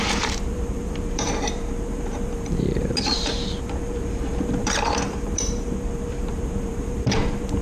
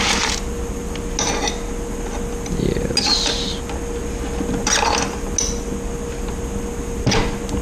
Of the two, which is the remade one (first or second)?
first